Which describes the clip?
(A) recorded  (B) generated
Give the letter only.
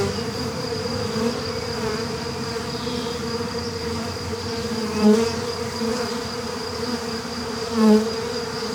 B